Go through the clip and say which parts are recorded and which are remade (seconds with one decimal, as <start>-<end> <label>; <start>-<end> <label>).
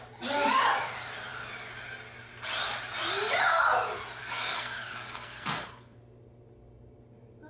0.0-4.2 recorded; 4.2-6.0 remade; 6.0-7.5 recorded